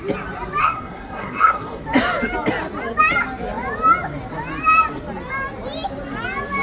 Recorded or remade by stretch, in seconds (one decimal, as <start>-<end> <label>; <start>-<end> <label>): 0.0-0.6 recorded; 0.6-1.8 remade; 1.8-6.6 recorded

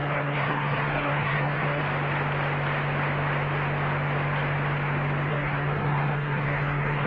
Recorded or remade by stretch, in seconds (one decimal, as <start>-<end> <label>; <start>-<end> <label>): 0.0-1.8 remade; 1.8-5.3 recorded; 5.3-7.1 remade

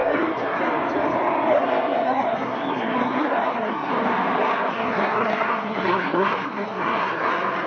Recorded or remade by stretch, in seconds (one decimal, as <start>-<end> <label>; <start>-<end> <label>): 0.0-0.6 remade; 0.6-1.5 recorded; 1.5-3.9 remade; 3.9-4.7 recorded; 4.7-7.3 remade; 7.3-7.7 recorded

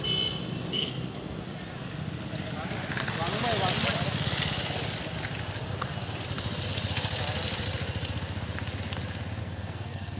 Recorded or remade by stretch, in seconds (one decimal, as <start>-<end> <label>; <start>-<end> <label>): 0.0-0.7 recorded; 0.7-1.4 remade; 1.4-9.4 recorded; 9.4-10.2 remade

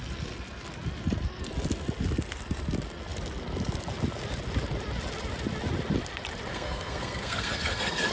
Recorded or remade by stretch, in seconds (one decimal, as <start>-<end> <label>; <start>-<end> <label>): 0.0-6.5 recorded; 6.5-8.1 remade

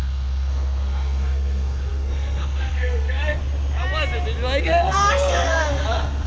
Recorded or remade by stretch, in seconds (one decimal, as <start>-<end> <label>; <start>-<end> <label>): 0.0-3.4 remade; 3.4-4.6 recorded; 4.6-6.3 remade